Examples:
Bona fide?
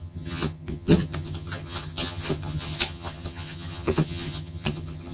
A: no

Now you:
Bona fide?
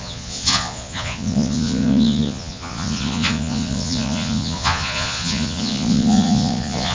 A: no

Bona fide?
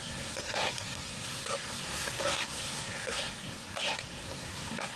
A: no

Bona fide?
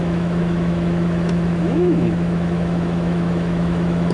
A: no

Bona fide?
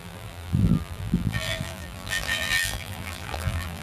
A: no